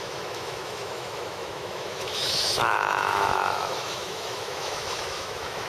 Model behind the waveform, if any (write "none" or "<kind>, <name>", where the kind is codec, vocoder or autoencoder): autoencoder, DAC-VAE